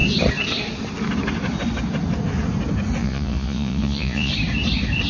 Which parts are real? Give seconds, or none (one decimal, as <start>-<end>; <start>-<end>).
0.0-3.0; 4.3-5.1